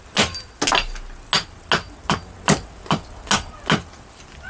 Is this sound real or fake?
real